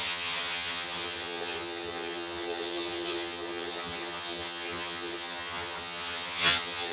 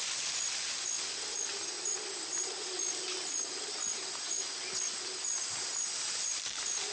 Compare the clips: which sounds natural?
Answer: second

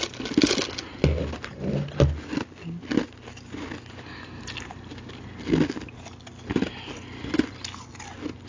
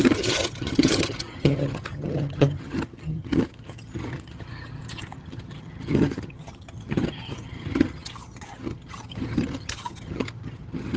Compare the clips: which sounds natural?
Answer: first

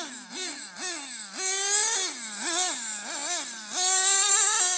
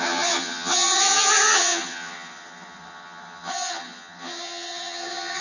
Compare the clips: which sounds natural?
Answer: first